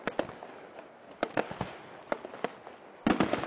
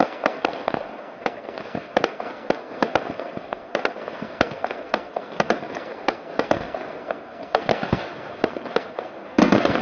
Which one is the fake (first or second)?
second